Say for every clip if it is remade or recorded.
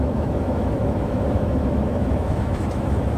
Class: remade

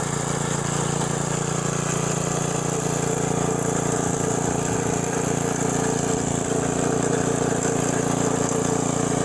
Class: recorded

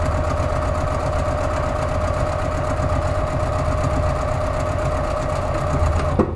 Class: recorded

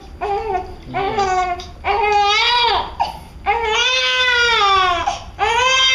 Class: recorded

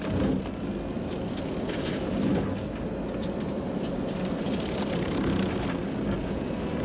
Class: recorded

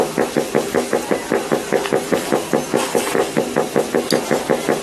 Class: recorded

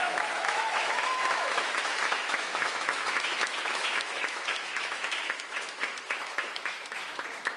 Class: remade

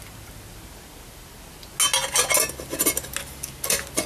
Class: recorded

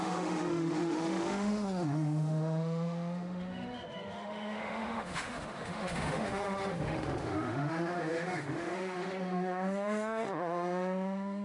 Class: remade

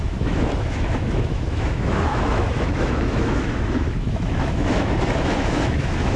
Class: remade